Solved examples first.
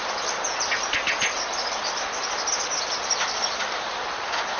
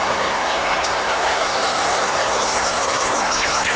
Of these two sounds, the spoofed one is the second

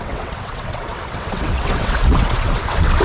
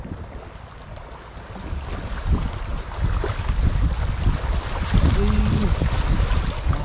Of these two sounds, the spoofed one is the first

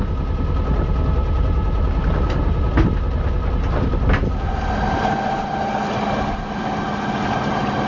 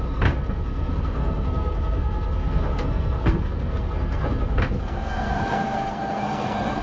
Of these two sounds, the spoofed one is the second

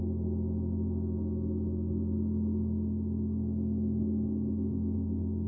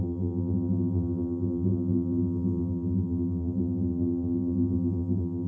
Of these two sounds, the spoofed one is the second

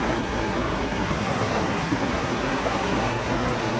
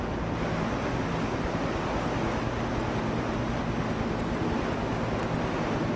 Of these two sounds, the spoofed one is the first